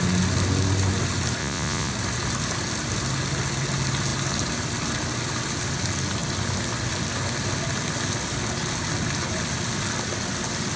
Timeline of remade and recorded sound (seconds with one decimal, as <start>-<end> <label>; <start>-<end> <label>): 0.0-1.4 recorded; 1.4-1.9 remade; 1.9-10.8 recorded